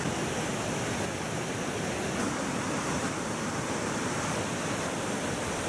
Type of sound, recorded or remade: remade